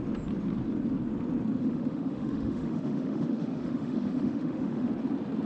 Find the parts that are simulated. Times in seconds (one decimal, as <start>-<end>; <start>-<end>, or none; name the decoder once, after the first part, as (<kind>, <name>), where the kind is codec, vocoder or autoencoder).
1.6-4.9 (autoencoder, DAC-VAE)